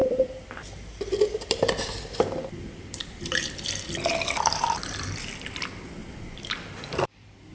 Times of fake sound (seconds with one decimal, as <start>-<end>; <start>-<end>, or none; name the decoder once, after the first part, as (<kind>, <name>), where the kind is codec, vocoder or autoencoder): 0.0-6.0 (vocoder, BigVGAN v2); 6.8-7.5